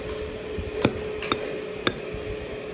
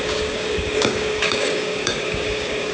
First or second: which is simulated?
second